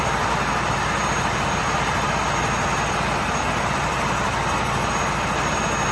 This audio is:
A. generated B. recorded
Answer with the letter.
B